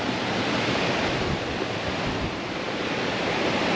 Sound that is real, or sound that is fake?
real